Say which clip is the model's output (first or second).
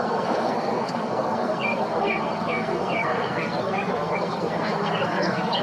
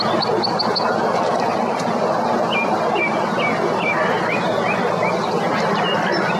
first